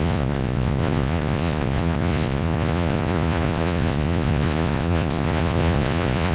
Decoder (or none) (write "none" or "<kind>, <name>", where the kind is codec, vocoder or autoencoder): vocoder, Vocos